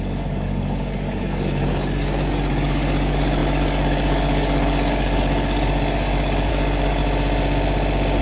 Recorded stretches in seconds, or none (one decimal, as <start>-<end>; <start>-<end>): 7.0-8.2